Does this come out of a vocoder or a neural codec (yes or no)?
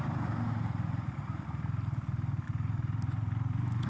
no